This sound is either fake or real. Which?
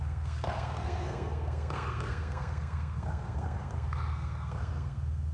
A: fake